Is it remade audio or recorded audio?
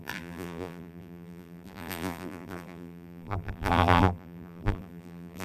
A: remade